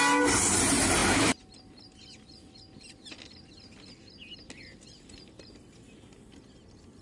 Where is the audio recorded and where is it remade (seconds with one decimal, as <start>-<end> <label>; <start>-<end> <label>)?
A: 0.0-7.0 recorded